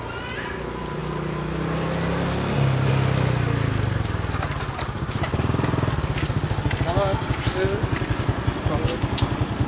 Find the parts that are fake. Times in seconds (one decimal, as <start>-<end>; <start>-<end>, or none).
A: none